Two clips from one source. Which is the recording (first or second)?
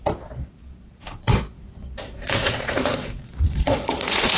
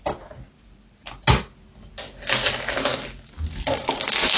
second